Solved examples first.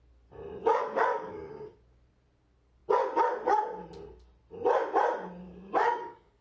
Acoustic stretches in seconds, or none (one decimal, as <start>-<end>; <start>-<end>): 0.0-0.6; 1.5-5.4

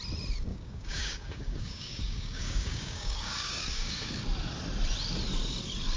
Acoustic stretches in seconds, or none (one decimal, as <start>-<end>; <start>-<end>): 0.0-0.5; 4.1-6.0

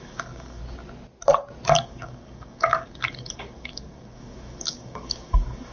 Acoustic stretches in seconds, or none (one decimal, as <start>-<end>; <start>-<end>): 0.6-1.7

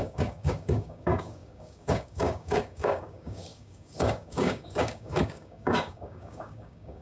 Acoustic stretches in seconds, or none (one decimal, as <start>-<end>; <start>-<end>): none

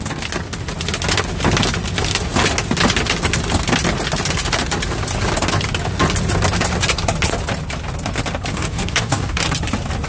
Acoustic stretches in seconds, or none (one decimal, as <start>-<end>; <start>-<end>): 0.0-8.5; 9.4-10.1